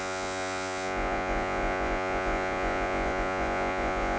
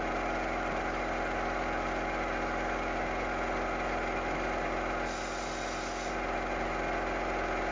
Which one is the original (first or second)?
second